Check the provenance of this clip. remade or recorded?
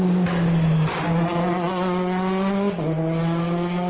recorded